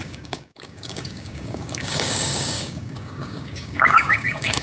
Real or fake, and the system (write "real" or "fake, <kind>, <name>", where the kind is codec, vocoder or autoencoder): fake, codec, DAC